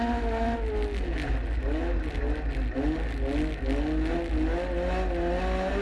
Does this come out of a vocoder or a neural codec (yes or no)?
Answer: no